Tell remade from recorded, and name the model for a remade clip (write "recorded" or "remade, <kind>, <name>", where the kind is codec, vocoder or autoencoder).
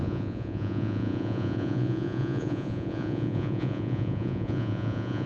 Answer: remade, vocoder, Vocos